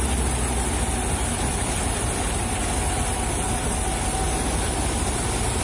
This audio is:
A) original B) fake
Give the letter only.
A